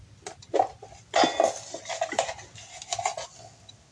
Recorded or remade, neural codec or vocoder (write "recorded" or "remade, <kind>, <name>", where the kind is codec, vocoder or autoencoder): recorded